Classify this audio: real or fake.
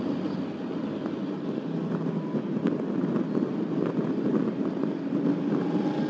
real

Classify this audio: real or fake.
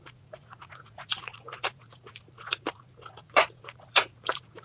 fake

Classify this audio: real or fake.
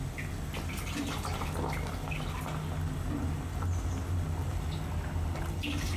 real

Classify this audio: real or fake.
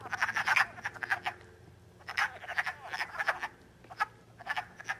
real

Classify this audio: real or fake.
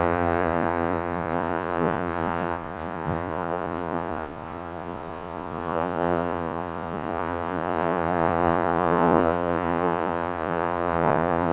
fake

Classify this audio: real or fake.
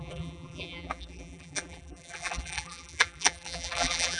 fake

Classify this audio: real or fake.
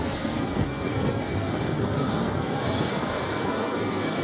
fake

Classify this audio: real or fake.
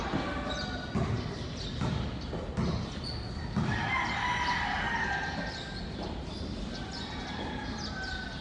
real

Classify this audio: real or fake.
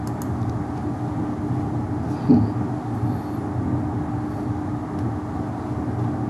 real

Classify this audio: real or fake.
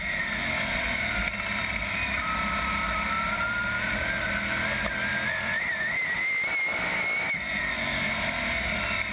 real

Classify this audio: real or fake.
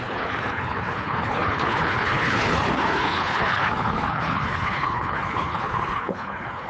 fake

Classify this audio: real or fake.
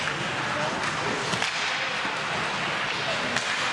real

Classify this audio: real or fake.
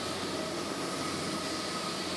real